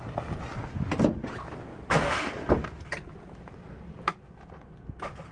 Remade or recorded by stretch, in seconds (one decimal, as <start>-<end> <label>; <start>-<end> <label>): 0.0-1.7 recorded; 1.7-3.5 remade; 3.5-5.3 recorded